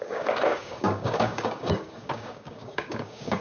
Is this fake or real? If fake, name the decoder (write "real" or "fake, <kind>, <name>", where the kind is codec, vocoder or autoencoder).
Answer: fake, codec, DAC